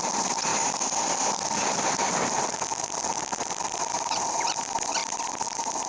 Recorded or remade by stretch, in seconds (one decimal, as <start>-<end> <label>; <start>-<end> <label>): 0.0-2.7 recorded; 2.7-3.9 remade; 3.9-5.0 recorded; 5.0-5.9 remade